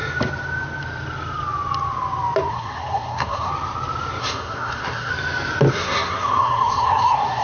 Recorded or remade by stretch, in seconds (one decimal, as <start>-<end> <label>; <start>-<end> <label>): 0.0-2.5 recorded; 2.5-3.5 remade; 3.5-4.2 recorded; 4.2-5.1 remade; 5.1-5.7 recorded; 5.7-7.4 remade